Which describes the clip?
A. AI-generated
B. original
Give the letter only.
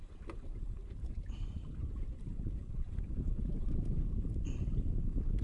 B